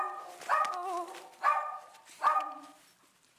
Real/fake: real